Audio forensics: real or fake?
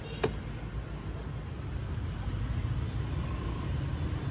real